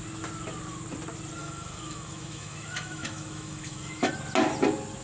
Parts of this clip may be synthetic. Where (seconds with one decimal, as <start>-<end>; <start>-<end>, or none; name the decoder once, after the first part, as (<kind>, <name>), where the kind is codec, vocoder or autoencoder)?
1.4-4.1 (autoencoder, DAC-VAE)